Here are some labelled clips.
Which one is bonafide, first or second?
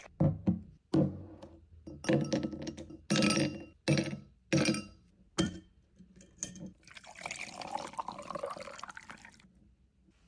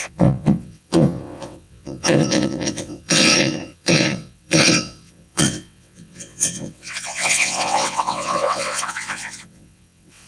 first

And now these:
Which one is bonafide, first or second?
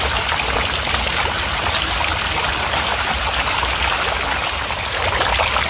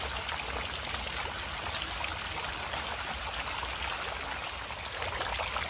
second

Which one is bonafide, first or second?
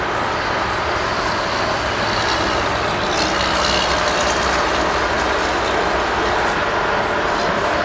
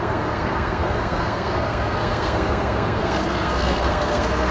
first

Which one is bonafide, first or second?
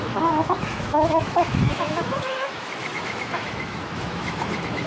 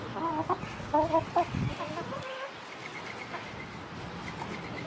second